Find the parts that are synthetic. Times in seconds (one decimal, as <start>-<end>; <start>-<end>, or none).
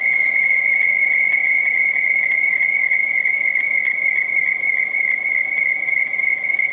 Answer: none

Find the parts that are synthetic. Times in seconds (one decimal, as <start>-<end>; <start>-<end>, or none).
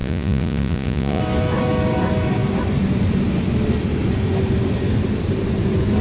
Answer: 0.0-1.2